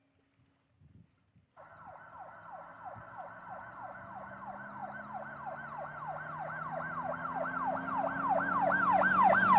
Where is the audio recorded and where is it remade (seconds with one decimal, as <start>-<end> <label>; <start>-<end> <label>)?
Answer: 0.0-9.6 recorded